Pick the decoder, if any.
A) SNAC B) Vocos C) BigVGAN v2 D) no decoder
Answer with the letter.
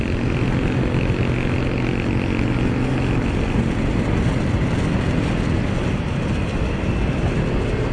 D